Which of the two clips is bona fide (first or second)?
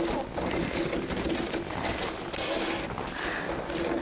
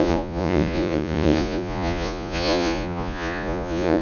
first